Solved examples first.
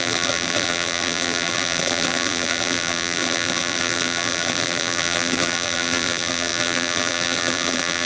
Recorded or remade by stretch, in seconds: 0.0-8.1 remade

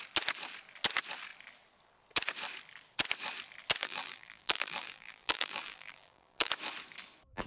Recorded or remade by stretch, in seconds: 0.0-3.8 recorded; 3.8-6.5 remade; 6.5-7.5 recorded

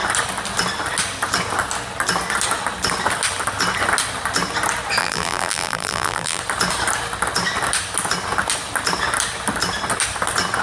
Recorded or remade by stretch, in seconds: 0.0-5.0 recorded; 5.0-6.4 remade; 6.4-10.6 recorded